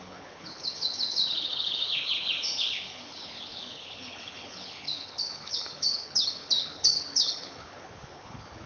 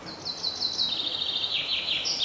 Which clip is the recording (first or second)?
second